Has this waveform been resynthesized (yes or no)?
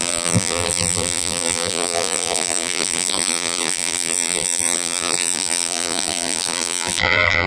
yes